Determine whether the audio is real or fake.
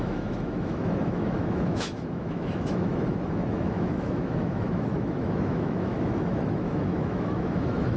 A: fake